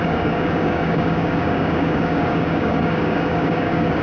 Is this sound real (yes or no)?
no